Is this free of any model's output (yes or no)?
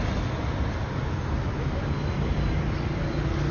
yes